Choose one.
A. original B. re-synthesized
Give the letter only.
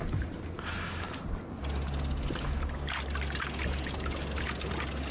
A